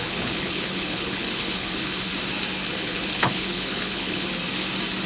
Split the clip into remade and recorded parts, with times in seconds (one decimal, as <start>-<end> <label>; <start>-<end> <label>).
0.0-2.1 remade; 2.1-2.7 recorded; 2.7-4.3 remade; 4.3-5.1 recorded